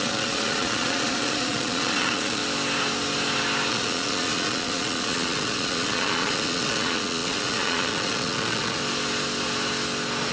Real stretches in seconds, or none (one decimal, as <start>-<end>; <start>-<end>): 2.4-3.7; 8.8-10.3